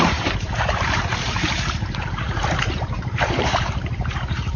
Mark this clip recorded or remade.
remade